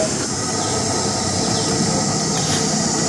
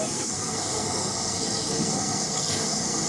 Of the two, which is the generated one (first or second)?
second